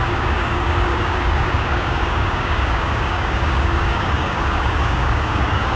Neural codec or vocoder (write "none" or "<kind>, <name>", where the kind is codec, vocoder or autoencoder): codec, DAC